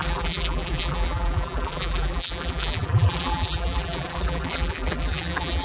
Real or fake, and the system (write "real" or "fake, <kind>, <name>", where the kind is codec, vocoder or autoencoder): fake, vocoder, BigVGAN v2